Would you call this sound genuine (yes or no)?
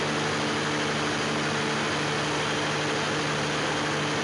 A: yes